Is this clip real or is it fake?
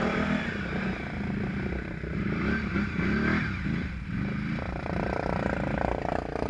fake